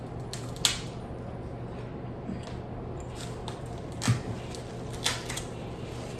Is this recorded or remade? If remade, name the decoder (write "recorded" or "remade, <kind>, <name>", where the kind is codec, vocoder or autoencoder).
recorded